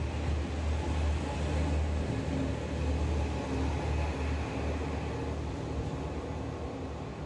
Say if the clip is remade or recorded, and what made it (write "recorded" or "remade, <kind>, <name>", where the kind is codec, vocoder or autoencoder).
recorded